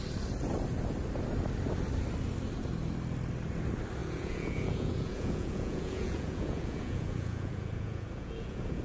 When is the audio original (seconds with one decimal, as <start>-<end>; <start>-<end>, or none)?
0.0-4.0